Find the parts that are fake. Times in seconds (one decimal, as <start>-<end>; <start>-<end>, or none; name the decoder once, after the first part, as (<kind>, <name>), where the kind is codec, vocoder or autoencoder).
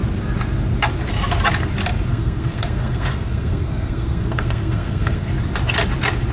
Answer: 2.1-5.3 (codec, SNAC)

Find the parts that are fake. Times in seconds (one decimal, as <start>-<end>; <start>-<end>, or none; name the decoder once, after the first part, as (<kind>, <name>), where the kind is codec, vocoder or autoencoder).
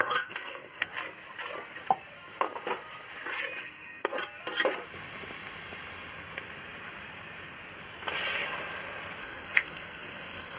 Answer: 0.0-0.9 (codec, SNAC); 3.6-4.1; 9.2-10.6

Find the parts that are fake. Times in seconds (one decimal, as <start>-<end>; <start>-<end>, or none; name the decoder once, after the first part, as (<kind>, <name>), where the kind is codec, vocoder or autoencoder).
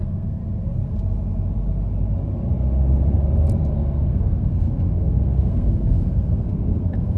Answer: 0.0-0.4 (codec, SNAC); 3.7-7.2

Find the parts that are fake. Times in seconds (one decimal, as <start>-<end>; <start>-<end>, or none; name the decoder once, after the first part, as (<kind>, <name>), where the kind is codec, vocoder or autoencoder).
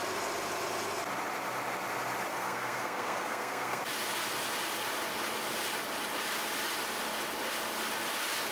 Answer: 2.3-3.8 (codec, SNAC)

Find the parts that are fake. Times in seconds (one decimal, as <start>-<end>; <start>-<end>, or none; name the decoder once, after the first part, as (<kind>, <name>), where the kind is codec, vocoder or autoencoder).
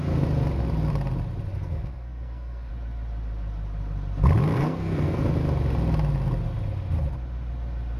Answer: 1.5-2.7 (codec, SNAC); 4.5-5.2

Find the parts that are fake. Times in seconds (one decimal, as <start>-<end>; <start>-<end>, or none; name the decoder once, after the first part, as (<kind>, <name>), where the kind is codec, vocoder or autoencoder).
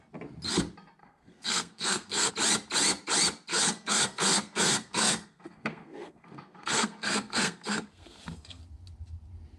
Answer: 1.0-2.3 (codec, SNAC); 3.5-8.6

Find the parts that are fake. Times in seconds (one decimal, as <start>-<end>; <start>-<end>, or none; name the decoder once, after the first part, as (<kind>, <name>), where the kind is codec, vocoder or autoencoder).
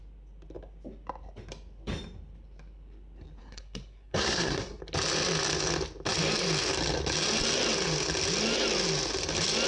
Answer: 3.4-4.8 (codec, SNAC)